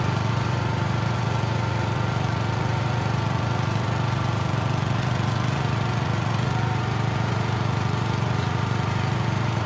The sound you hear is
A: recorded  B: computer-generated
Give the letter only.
B